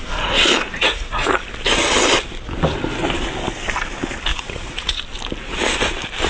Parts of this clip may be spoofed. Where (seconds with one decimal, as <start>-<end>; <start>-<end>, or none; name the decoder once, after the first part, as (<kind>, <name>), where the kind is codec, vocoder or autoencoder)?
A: 0.7-1.4 (vocoder, Vocos); 4.3-5.0